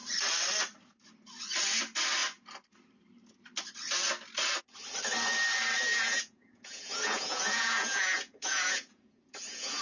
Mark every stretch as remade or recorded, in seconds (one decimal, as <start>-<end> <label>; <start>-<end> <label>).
0.0-5.9 recorded; 5.9-9.8 remade